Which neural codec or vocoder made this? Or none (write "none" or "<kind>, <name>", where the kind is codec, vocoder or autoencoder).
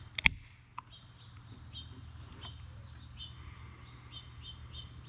none